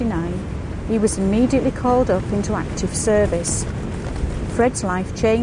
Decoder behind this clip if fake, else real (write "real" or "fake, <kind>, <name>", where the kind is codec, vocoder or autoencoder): real